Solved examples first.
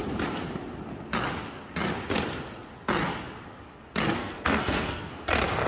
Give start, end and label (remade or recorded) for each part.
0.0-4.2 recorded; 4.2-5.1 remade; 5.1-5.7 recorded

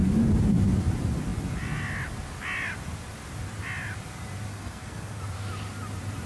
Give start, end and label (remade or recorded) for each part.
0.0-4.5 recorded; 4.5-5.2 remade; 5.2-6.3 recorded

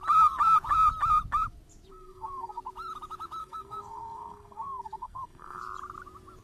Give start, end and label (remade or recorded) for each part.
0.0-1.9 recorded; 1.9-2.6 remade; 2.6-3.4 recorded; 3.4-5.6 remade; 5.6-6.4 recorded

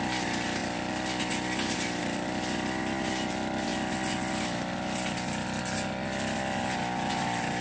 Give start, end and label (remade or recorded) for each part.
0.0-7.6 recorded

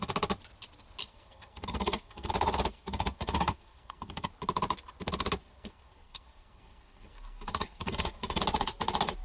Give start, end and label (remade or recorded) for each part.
0.0-1.0 recorded; 1.0-2.3 remade; 2.3-2.7 recorded; 2.7-4.3 remade; 4.3-5.4 recorded; 5.4-8.4 remade; 8.4-9.2 recorded

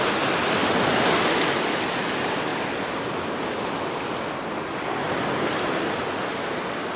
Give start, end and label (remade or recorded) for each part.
0.0-7.0 recorded

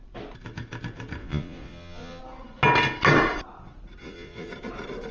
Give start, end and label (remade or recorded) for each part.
0.0-1.2 recorded; 1.2-2.2 remade; 2.2-4.0 recorded; 4.0-4.5 remade; 4.5-5.1 recorded